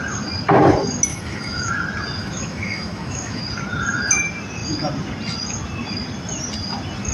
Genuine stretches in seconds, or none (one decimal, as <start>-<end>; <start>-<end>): 0.0-1.1; 1.7-2.2; 3.4-7.1